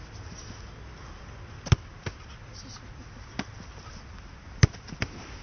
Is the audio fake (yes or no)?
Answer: no